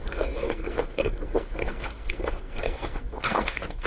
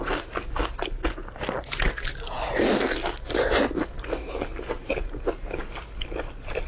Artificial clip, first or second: first